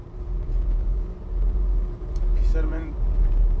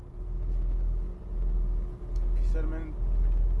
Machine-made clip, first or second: first